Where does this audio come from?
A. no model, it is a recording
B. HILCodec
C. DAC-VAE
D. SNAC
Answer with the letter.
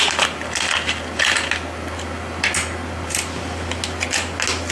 A